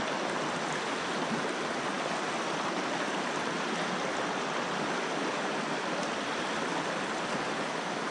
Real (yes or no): yes